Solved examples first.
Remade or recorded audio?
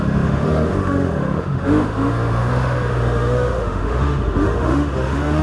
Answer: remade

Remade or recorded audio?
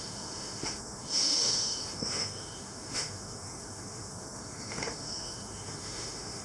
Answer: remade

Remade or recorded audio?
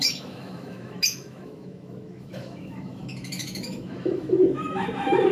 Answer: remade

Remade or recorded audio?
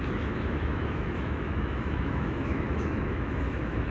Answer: remade